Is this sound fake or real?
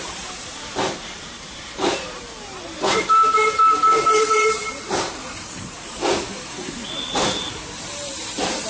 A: fake